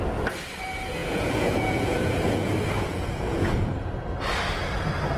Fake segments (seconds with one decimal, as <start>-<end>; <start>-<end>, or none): 1.0-3.9